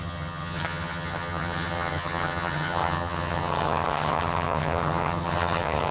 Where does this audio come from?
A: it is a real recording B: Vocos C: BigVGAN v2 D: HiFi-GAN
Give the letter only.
D